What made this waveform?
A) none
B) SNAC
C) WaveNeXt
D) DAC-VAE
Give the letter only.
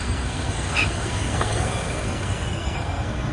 B